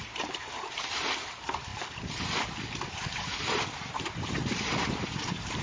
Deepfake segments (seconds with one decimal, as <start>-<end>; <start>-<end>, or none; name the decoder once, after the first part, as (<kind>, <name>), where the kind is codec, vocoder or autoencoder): 0.0-1.7 (vocoder, BigVGAN v2); 2.9-5.6